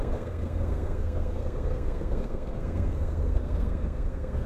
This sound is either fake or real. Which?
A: fake